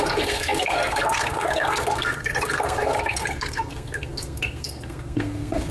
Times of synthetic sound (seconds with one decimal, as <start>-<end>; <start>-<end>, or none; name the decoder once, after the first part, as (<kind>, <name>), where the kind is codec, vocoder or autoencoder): 0.0-5.7 (codec, SNAC)